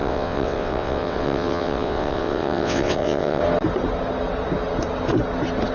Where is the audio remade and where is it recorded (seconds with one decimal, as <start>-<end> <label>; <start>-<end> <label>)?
0.0-3.4 remade; 3.4-5.7 recorded